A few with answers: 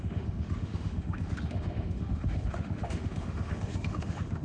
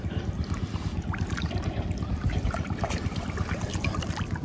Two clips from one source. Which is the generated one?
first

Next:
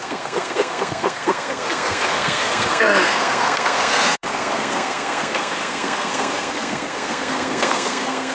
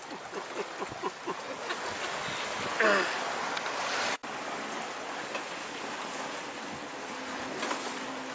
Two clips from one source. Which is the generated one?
first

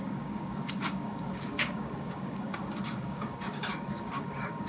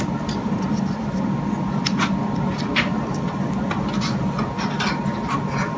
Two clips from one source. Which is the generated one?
first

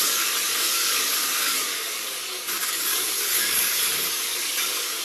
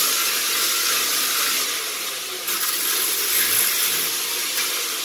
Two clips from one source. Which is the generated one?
first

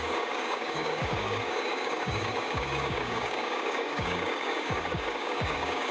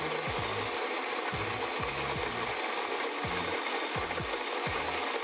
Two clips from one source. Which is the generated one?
first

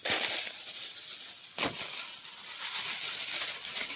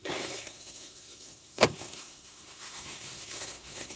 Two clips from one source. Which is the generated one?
second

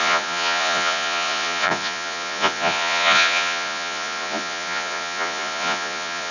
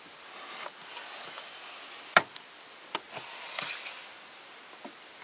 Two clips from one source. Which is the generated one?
first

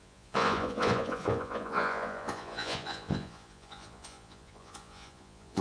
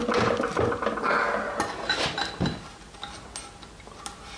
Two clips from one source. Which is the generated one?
first